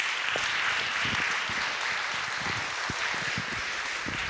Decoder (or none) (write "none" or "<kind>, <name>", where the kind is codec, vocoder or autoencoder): none